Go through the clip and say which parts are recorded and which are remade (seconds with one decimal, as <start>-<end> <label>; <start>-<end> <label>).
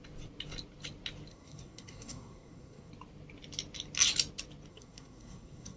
0.0-1.3 recorded; 1.3-2.9 remade; 2.9-4.7 recorded; 4.7-5.8 remade